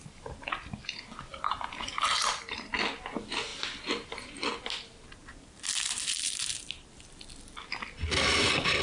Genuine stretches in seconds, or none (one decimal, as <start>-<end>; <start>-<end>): 0.0-1.3; 2.7-5.2; 6.6-8.8